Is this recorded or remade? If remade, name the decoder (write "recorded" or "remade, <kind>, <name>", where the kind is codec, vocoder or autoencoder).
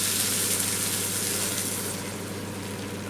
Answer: recorded